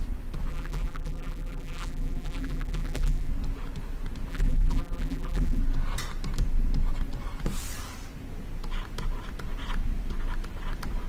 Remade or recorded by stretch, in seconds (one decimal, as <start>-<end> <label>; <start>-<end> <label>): 0.0-0.5 recorded; 0.5-3.3 remade; 3.3-4.3 recorded; 4.3-5.6 remade; 5.6-11.1 recorded